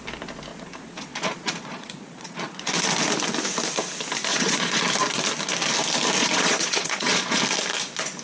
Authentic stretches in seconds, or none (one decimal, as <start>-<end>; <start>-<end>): 0.0-0.5; 2.8-4.3; 4.8-6.2; 7.4-8.2